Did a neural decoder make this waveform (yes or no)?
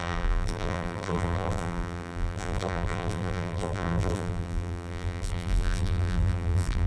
yes